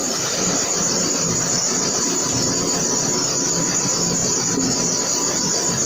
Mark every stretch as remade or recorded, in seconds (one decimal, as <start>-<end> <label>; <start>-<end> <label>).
0.0-2.5 remade; 2.5-5.9 recorded